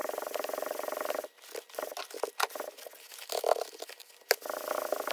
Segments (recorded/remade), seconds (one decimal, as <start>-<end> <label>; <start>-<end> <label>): 0.0-5.1 recorded